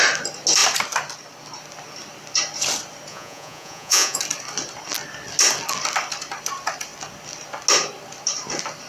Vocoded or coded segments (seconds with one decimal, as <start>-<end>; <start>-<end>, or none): 3.1-4.2